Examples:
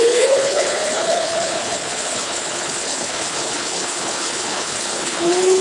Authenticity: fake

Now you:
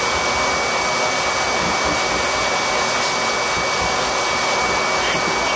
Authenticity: real